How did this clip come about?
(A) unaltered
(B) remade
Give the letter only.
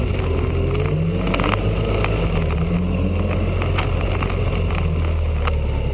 A